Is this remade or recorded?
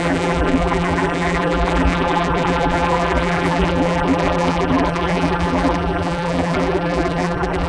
remade